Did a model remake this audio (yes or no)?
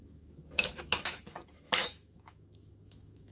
yes